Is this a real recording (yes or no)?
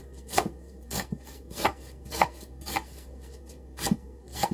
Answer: no